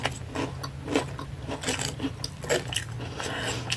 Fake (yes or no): no